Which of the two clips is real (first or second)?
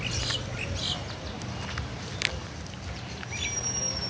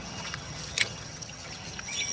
first